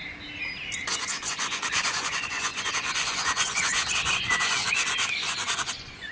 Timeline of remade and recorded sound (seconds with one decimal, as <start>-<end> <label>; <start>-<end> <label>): 0.0-0.9 recorded; 0.9-6.1 remade